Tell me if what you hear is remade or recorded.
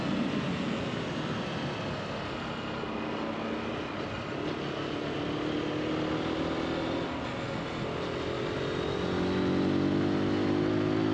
recorded